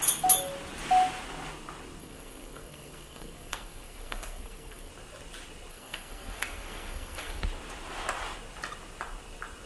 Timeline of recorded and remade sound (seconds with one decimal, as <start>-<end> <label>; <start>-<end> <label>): 0.0-2.0 recorded; 2.0-4.9 remade; 4.9-5.7 recorded; 5.7-7.4 remade; 7.4-9.7 recorded